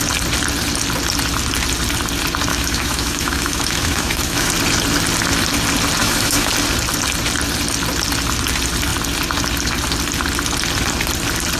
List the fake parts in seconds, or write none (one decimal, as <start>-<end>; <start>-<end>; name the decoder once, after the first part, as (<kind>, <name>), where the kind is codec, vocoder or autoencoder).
2.5-4.5 (autoencoder, DAC-VAE); 6.0-6.5